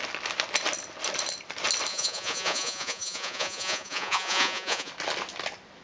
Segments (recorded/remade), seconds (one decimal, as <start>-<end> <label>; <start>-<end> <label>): 0.0-1.9 recorded; 1.9-4.9 remade; 4.9-5.8 recorded